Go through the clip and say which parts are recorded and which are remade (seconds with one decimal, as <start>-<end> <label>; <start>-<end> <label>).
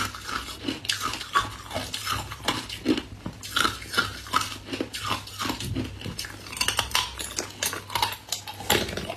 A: 0.0-9.2 recorded